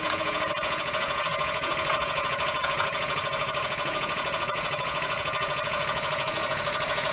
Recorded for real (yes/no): no